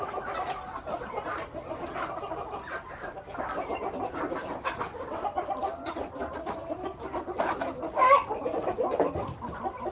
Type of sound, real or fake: fake